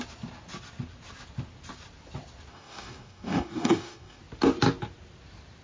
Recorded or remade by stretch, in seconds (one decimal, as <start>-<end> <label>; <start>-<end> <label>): 0.0-2.5 recorded; 2.5-4.2 remade; 4.2-5.6 recorded